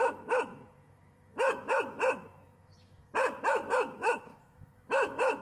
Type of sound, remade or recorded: remade